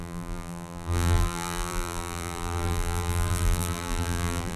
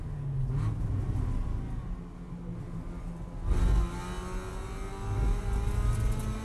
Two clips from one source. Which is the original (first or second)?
second